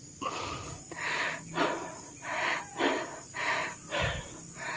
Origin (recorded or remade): recorded